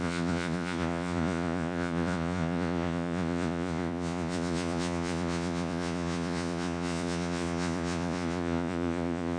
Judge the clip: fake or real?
fake